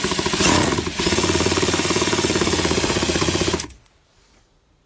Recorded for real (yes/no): no